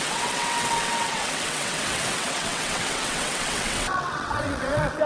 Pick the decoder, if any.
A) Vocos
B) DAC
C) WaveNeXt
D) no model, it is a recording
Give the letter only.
C